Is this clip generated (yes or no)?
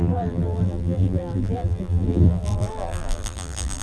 yes